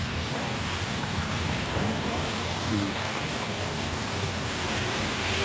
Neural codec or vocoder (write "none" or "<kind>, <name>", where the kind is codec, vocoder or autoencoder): codec, DAC